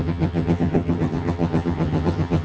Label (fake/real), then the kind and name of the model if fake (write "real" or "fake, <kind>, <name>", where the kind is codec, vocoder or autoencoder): fake, vocoder, HiFi-GAN